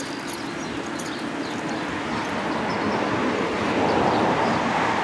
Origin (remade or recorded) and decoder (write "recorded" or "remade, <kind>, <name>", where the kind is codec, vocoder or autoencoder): recorded